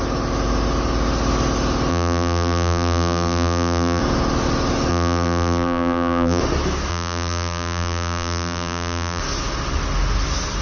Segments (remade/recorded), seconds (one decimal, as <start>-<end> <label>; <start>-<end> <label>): 0.0-1.9 recorded; 1.9-4.0 remade; 4.0-4.9 recorded; 4.9-6.4 remade; 6.4-6.9 recorded; 6.9-9.2 remade; 9.2-10.6 recorded